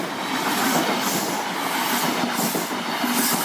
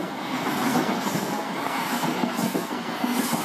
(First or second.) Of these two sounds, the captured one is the first